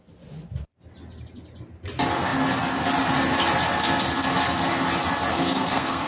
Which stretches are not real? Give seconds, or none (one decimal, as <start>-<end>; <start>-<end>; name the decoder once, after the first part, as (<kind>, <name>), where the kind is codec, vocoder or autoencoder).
5.3-6.1 (codec, SNAC)